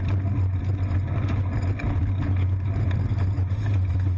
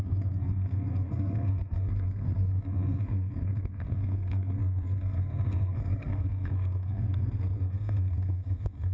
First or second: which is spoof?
second